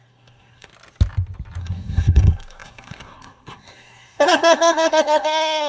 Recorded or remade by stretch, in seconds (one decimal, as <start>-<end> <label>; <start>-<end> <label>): 0.0-0.7 remade; 0.7-1.6 recorded; 1.6-5.7 remade